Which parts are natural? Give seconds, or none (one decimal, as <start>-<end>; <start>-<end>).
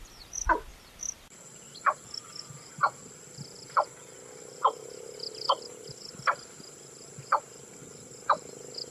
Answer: 0.0-0.7; 5.8-8.9